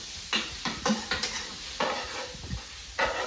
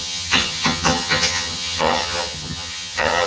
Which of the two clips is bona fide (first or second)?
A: first